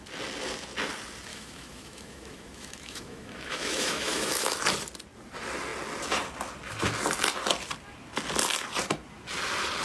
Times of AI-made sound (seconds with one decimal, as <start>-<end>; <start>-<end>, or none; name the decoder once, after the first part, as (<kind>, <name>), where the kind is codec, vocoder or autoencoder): 1.3-4.6 (autoencoder, DAC-VAE)